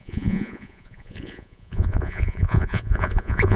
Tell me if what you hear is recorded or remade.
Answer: remade